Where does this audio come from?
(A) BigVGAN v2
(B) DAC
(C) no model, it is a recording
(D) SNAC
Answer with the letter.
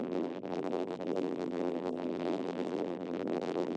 A